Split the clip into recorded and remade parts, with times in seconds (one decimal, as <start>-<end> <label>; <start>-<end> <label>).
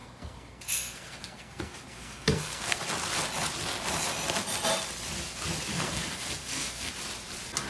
0.0-2.8 remade; 2.8-5.7 recorded; 5.7-6.9 remade; 6.9-7.7 recorded